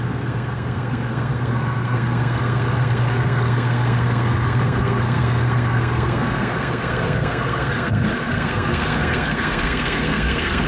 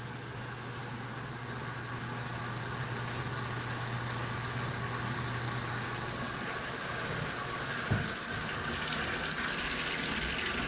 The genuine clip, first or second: second